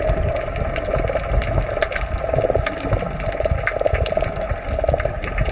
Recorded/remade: recorded